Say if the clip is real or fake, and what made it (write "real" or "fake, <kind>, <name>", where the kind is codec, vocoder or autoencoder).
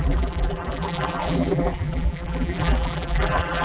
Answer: fake, vocoder, BigVGAN v2